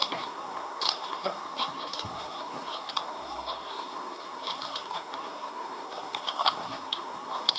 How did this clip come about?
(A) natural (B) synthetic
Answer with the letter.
B